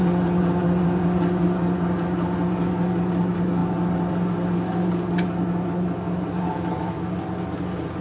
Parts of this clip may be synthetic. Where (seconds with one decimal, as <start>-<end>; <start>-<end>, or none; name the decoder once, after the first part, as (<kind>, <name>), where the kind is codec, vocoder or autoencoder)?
none

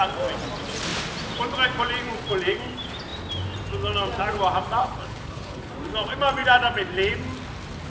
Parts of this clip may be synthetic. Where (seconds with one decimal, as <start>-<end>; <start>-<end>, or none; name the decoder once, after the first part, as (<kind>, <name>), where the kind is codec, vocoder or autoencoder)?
4.8-5.7 (codec, HILCodec)

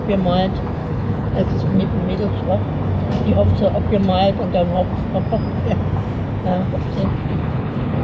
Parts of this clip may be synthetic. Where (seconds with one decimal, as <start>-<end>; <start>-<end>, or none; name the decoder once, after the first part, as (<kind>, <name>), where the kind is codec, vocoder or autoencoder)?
0.8-1.8 (codec, HILCodec); 6.5-8.0

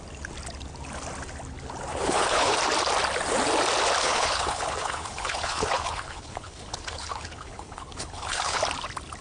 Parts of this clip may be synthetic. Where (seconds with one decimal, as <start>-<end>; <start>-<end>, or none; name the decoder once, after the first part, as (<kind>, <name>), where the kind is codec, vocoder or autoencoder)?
1.9-2.6 (codec, HILCodec); 4.0-8.6

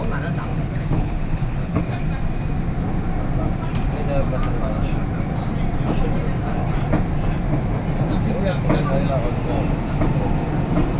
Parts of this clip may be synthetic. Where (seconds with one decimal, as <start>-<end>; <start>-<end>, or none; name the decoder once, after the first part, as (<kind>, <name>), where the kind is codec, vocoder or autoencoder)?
0.5-1.8 (codec, HILCodec)

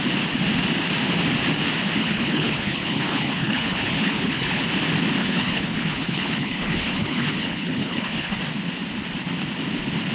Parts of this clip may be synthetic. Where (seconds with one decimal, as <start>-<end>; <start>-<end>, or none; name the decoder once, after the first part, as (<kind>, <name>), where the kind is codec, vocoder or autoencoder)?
2.0-4.6 (codec, HILCodec); 5.2-8.4

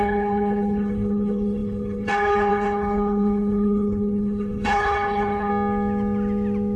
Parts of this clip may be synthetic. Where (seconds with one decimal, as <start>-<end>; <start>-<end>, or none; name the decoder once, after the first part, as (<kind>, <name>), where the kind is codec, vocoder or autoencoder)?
0.0-5.5 (codec, HILCodec)

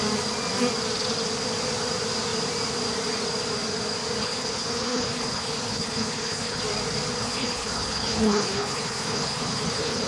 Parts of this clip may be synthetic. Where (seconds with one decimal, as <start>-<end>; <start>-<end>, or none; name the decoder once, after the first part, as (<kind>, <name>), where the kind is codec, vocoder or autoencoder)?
4.2-6.6 (codec, HILCodec); 7.2-10.1